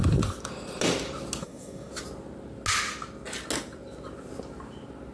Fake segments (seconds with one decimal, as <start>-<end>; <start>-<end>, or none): 1.4-1.9

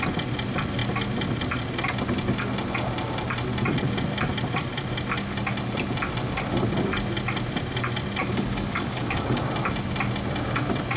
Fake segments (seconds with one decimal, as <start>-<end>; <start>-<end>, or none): 8.2-9.4

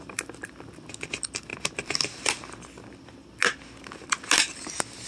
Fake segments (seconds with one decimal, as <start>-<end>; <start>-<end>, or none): none

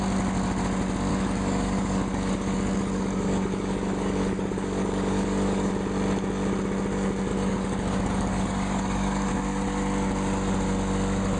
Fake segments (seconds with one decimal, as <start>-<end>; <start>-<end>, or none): 1.1-5.7; 7.3-9.3

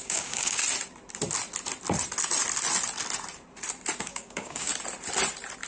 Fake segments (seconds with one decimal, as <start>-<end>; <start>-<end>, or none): 0.0-0.6; 4.0-4.7

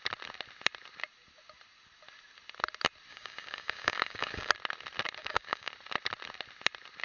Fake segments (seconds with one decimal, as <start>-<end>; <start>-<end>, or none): 3.1-4.5; 5.2-5.7

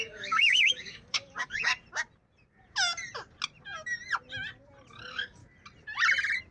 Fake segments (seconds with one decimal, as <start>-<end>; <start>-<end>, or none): 0.0-1.7; 4.9-5.4

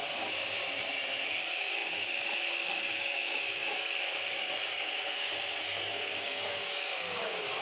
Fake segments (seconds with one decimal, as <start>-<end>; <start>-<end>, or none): 1.3-7.6